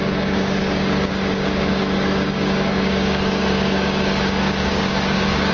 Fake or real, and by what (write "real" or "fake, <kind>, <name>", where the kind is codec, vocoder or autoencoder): fake, codec, DAC